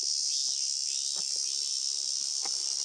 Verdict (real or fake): real